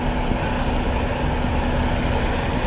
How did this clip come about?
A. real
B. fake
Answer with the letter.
A